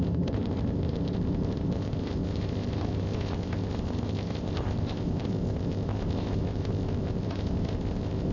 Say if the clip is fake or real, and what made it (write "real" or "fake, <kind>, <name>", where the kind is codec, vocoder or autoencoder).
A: fake, codec, ZipCodec